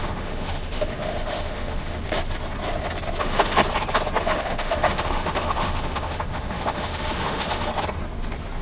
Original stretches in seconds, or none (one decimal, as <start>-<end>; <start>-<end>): 2.0-3.2; 3.6-4.2; 7.7-8.6